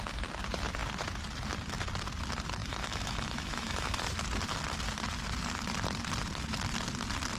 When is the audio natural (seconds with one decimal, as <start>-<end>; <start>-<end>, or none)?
0.0-2.6; 4.0-7.4